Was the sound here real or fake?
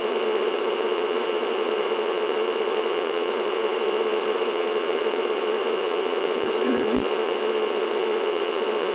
fake